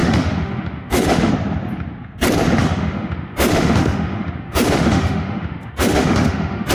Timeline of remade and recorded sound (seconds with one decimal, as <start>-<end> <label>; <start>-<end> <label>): 0.0-1.3 remade; 1.3-2.6 recorded; 2.6-6.7 remade